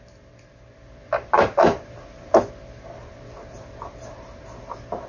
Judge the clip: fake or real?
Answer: real